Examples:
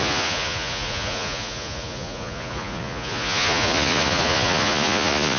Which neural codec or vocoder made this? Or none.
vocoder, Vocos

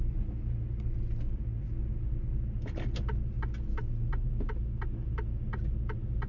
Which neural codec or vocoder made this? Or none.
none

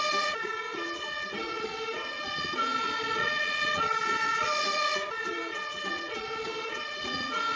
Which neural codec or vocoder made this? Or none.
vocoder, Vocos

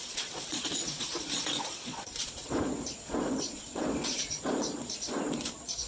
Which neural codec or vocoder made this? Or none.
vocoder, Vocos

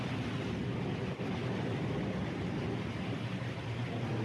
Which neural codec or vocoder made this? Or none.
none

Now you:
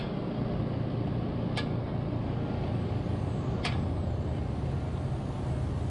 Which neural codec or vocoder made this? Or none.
none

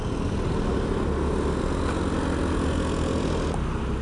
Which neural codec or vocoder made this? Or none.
none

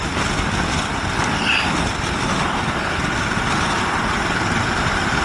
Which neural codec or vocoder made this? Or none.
none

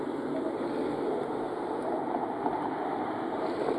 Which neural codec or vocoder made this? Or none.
none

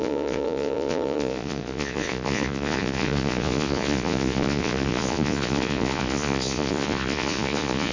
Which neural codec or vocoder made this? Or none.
vocoder, Vocos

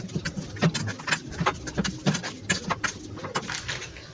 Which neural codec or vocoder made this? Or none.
none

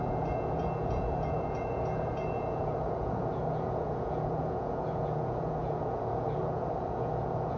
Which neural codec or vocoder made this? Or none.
vocoder, Vocos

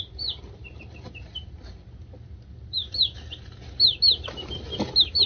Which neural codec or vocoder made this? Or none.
none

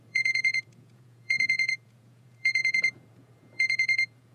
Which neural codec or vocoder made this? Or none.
vocoder, Vocos